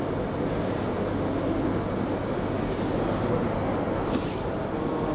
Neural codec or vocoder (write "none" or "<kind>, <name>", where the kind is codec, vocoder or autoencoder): none